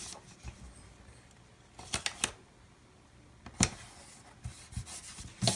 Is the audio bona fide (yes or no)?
yes